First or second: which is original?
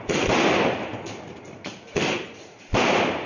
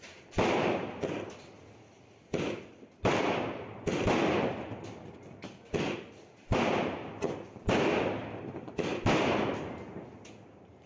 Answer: second